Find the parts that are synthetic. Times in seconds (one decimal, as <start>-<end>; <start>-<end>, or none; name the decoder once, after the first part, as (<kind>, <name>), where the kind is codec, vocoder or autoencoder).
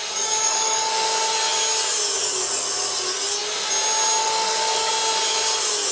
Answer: 0.0-0.9 (codec, DAC); 4.2-4.9